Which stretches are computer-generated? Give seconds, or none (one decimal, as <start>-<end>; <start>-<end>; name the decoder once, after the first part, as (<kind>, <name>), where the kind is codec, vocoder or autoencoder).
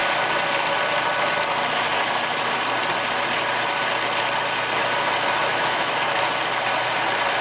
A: 5.5-6.1 (autoencoder, DAC-VAE)